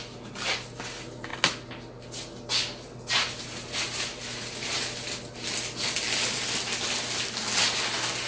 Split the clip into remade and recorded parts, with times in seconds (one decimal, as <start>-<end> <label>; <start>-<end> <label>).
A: 0.0-8.3 recorded